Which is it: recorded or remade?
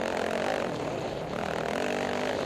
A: recorded